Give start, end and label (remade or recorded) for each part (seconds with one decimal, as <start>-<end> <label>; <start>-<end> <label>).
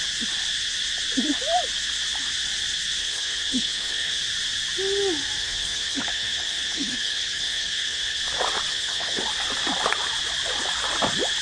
0.0-3.0 recorded; 3.0-4.2 remade; 4.2-5.4 recorded; 5.4-8.2 remade; 8.2-8.7 recorded; 8.7-9.2 remade; 9.2-11.4 recorded